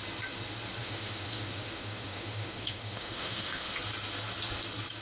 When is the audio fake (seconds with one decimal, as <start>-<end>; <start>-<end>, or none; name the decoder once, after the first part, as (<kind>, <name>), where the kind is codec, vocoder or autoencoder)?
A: 0.8-3.8 (autoencoder, DAC-VAE)